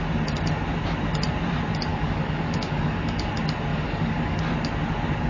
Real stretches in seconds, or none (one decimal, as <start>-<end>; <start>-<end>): 0.0-1.9; 3.3-3.7; 4.4-5.3